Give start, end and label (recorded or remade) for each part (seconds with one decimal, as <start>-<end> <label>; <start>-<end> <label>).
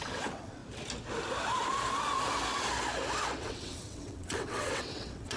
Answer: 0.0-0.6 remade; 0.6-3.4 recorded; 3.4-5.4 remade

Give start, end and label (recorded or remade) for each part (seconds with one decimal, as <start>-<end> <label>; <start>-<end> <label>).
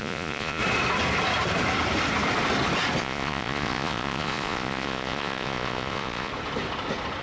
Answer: 0.0-0.6 remade; 0.6-3.0 recorded; 3.0-6.3 remade; 6.3-7.2 recorded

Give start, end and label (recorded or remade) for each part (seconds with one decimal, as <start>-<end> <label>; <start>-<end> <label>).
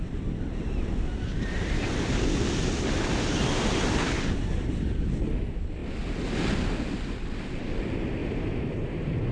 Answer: 0.0-8.2 recorded; 8.2-9.3 remade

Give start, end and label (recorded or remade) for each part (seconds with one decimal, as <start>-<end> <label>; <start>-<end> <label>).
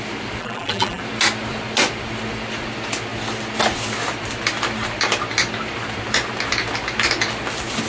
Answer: 0.0-0.4 recorded; 0.4-1.0 remade; 1.0-7.9 recorded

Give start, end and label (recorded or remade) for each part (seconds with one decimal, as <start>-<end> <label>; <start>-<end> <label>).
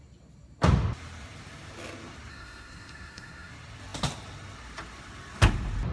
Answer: 0.0-2.3 recorded; 2.3-3.5 remade; 3.5-5.9 recorded